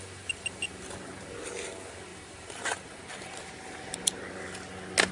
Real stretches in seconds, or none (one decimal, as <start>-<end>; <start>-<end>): 0.0-2.1; 4.2-5.1